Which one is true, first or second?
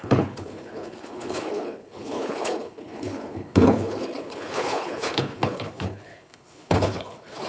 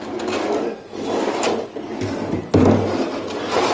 second